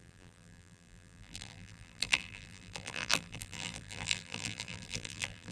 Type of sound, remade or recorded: remade